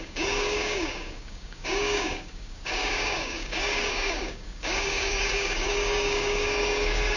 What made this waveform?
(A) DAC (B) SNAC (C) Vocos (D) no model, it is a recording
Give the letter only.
A